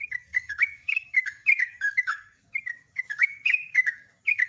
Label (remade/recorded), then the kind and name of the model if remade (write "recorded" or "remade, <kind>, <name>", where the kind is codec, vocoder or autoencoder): remade, codec, DAC